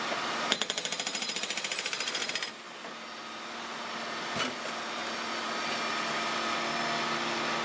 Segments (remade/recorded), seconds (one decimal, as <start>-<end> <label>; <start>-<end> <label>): 0.0-1.1 recorded; 1.1-2.3 remade; 2.3-7.6 recorded